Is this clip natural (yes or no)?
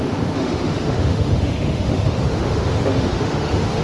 no